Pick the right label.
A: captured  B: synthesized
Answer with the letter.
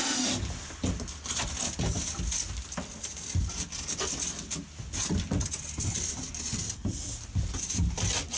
A